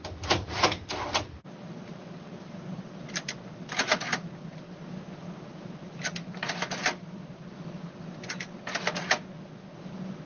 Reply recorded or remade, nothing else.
recorded